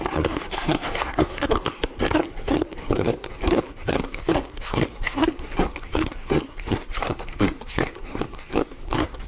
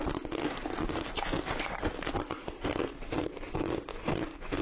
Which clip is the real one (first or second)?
second